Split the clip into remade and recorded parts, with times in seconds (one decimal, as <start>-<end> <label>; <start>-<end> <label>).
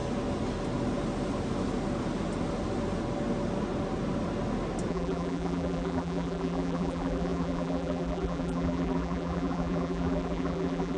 0.0-4.9 recorded; 4.9-11.0 remade